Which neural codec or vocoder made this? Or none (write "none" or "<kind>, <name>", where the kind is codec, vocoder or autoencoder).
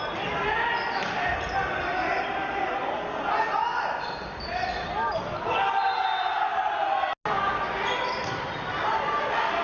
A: none